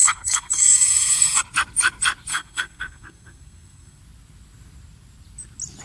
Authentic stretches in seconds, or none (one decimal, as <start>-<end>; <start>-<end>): 1.4-2.3; 4.0-5.8